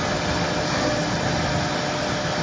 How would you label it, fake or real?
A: real